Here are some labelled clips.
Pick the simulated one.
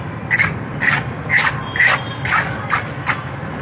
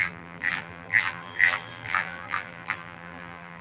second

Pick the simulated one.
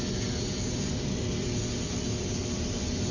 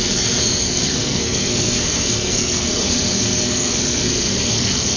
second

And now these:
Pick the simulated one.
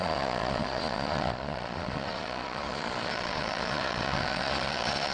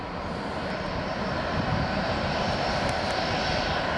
first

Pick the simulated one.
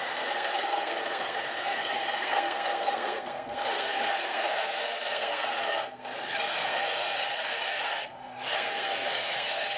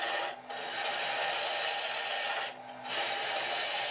first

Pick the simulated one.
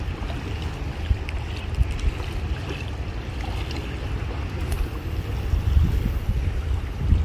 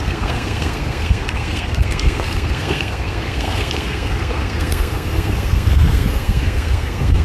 second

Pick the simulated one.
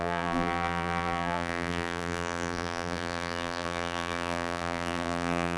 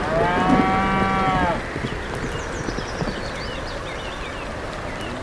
first